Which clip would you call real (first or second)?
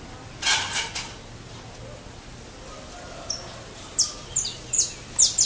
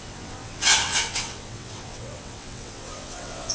first